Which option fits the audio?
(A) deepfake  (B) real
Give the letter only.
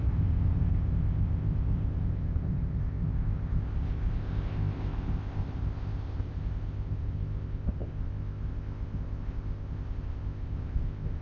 A